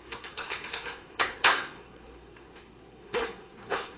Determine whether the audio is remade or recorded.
remade